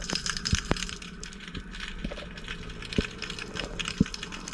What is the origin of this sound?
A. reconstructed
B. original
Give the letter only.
B